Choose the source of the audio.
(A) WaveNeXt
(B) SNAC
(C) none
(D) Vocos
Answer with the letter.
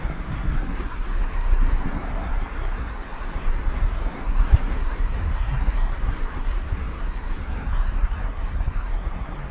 B